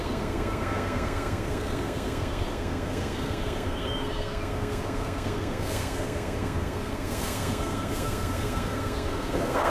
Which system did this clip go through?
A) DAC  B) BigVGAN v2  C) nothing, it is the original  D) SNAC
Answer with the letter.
D